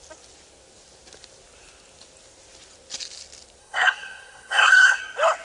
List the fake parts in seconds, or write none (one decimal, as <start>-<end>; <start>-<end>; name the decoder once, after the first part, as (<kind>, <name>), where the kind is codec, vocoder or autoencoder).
3.6-5.0 (codec, SNAC)